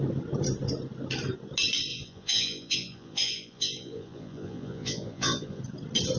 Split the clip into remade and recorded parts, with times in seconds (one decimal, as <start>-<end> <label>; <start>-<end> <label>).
0.0-1.9 recorded; 1.9-5.6 remade; 5.6-6.2 recorded